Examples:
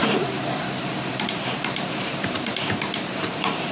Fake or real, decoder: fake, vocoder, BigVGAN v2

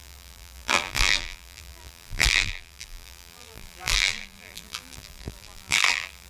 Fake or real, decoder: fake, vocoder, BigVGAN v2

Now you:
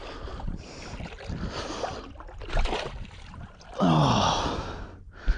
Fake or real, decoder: real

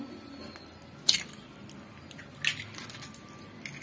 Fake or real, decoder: real